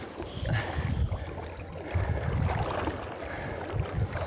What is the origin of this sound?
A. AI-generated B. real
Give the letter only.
B